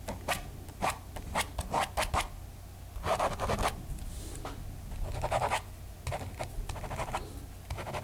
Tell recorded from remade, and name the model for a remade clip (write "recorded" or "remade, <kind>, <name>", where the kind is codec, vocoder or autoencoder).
recorded